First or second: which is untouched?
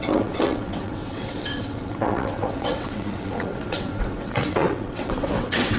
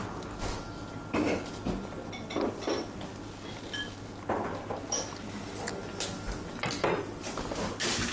second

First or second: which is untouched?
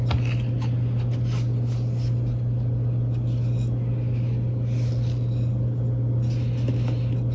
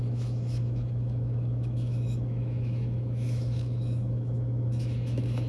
first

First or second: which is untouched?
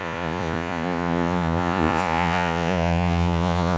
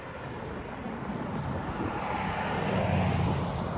second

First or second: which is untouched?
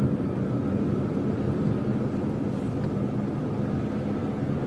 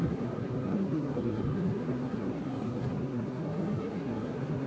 first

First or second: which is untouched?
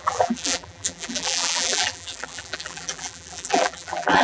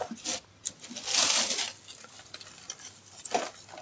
second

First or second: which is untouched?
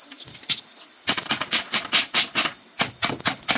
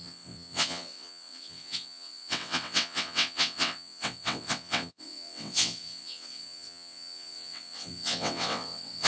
first